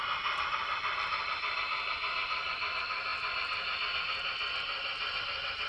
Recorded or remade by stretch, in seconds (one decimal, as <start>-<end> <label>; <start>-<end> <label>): 0.0-5.7 recorded